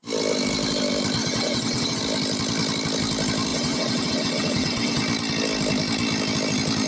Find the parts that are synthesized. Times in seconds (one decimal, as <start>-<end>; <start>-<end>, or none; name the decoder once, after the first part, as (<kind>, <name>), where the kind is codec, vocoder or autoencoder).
1.2-2.0 (vocoder, WaveNeXt); 3.5-5.0